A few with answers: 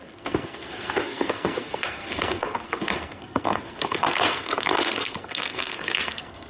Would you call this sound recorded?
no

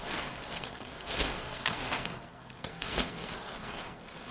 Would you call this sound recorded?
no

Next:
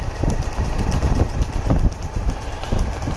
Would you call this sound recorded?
yes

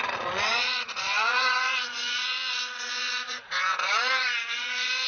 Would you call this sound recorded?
no